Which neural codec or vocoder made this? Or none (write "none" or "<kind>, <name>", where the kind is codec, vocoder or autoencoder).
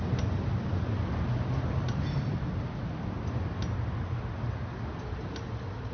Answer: none